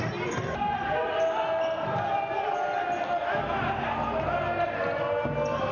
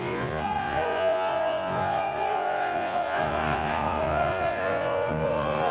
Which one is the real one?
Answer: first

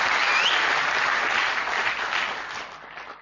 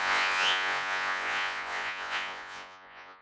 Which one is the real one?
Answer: first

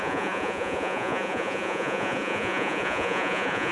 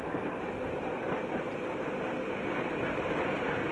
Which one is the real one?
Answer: second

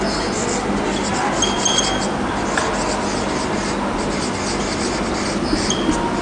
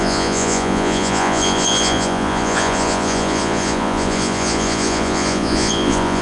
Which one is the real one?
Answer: first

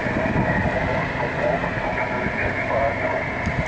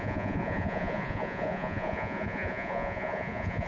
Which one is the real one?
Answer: first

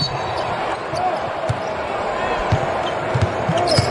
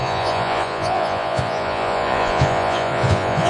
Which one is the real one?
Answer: first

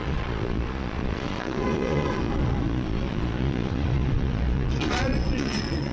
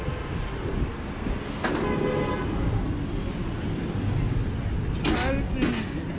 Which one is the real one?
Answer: second